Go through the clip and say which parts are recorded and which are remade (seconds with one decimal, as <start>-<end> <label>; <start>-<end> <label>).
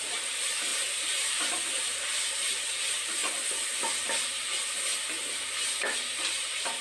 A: 0.0-3.2 remade; 3.2-6.1 recorded; 6.1-6.8 remade